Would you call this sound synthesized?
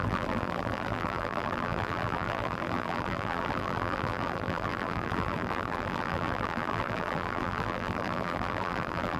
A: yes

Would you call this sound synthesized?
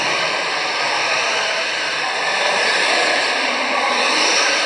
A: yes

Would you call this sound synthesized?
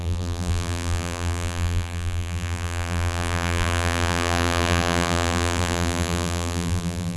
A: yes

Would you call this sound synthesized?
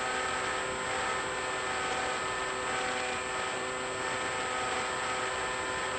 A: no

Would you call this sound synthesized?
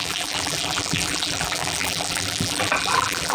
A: yes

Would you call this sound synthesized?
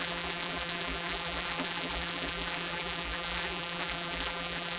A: yes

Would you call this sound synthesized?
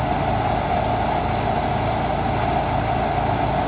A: no